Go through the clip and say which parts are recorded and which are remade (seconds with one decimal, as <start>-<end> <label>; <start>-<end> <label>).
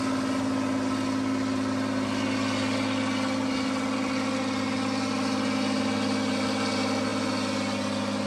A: 0.0-8.3 recorded